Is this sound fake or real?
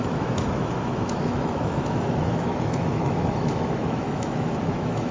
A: fake